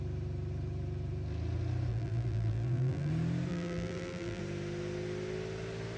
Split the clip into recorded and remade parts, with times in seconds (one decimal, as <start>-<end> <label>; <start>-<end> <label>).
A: 0.0-1.9 recorded; 1.9-3.1 remade; 3.1-3.5 recorded; 3.5-4.4 remade; 4.4-6.0 recorded